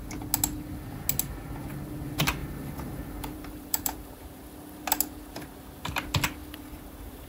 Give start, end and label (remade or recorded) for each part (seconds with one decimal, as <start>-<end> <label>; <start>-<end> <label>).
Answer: 0.0-2.4 recorded; 2.4-4.2 remade; 4.2-6.4 recorded; 6.4-7.3 remade